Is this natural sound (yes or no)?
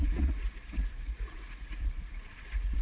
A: no